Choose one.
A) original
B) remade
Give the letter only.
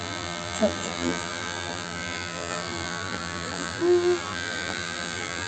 B